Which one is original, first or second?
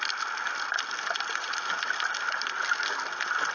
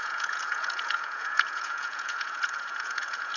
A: first